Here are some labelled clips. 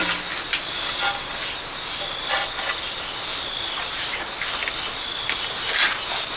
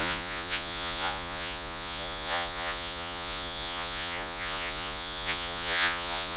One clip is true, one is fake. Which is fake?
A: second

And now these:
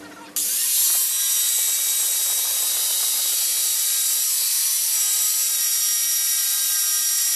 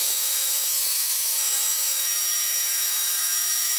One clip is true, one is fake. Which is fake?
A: second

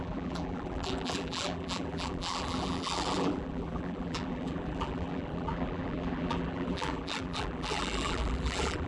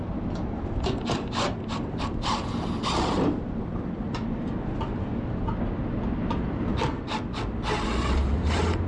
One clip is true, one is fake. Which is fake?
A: first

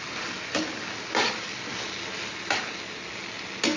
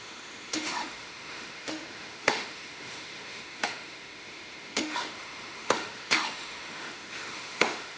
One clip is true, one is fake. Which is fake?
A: second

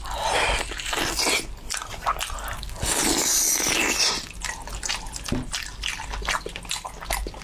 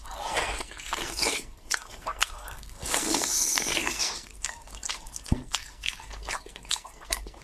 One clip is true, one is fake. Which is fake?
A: second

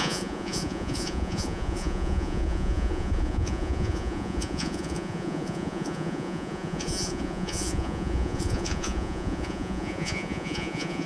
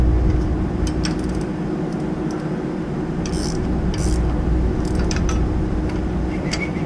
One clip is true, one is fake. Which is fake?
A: first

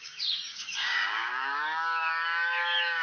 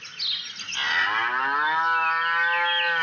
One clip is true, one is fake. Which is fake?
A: first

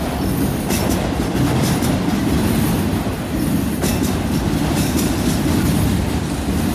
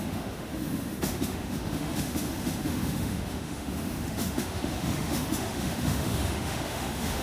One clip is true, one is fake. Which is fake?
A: second